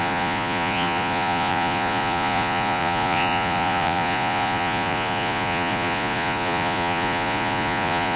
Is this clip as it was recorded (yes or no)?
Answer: no